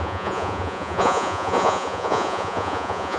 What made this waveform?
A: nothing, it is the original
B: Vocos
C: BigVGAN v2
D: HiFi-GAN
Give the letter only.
B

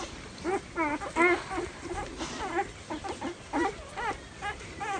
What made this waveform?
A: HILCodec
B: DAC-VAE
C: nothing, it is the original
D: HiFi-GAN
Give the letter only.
C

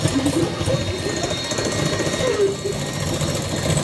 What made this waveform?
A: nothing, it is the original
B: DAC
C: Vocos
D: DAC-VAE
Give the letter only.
A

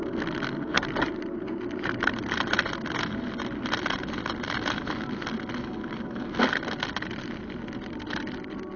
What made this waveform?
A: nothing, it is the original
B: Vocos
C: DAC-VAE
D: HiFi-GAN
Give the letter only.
A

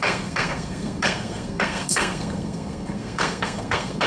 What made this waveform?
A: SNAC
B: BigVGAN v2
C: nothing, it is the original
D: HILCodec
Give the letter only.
A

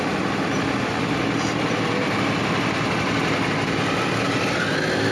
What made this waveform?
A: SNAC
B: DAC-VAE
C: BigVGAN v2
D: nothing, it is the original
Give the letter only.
D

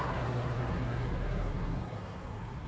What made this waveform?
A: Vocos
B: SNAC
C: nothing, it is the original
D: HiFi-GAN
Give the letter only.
B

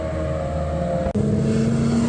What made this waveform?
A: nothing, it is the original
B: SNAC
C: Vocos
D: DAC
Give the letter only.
A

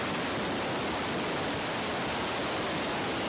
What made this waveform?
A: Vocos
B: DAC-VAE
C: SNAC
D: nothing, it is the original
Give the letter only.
D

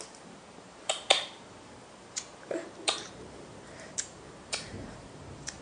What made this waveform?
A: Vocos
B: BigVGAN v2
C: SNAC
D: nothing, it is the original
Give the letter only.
B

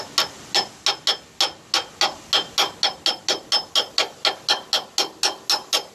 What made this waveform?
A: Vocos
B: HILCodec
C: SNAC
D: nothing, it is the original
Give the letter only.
D